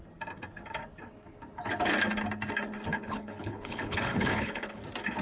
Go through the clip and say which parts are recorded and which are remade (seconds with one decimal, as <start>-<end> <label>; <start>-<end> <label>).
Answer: 0.0-2.9 recorded; 2.9-4.8 remade; 4.8-5.2 recorded